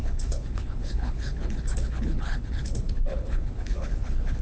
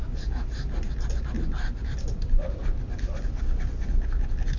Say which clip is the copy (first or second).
first